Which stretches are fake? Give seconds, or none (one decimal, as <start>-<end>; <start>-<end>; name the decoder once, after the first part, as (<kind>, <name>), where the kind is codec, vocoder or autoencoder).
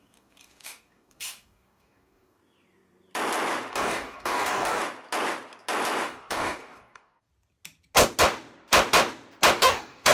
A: 0.0-2.4 (codec, DAC); 3.7-4.8; 6.1-7.3; 9.6-10.1